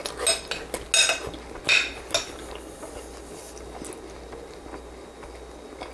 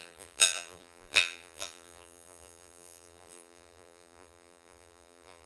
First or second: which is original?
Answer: first